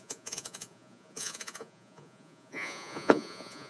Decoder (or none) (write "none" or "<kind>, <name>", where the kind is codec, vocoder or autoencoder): vocoder, Vocos